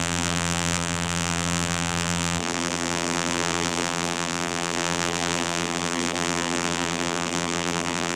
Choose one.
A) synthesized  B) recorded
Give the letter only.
A